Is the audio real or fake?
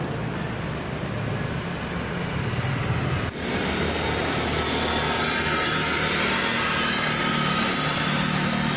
real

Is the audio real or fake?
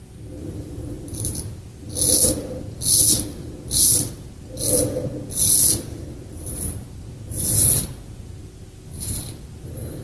real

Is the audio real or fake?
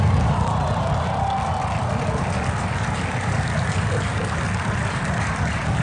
real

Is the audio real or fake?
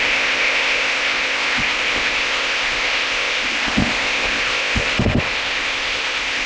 fake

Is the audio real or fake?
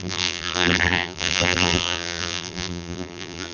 fake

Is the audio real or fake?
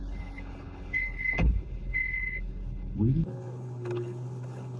fake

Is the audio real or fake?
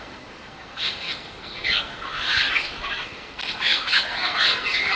fake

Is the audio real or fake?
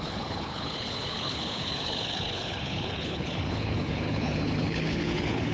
fake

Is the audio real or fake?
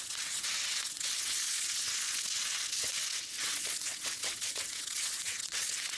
fake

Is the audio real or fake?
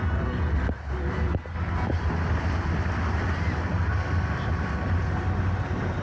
real